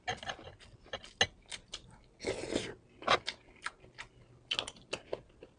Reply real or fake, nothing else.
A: real